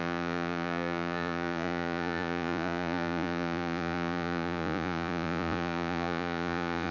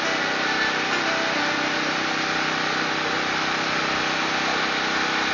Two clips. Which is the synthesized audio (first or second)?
first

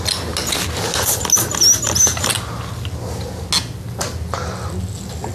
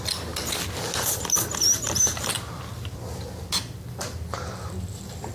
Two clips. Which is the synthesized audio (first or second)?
second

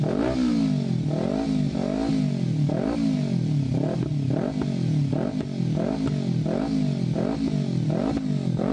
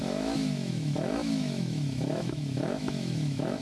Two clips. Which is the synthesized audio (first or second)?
second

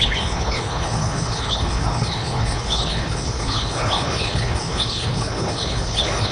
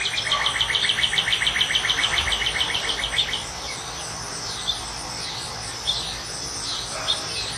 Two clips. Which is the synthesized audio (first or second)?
first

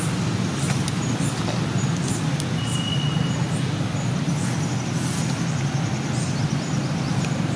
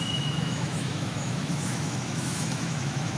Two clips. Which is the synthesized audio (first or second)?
second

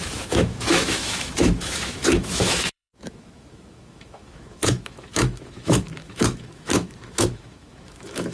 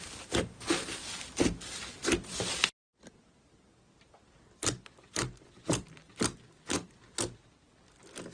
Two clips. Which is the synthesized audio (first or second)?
first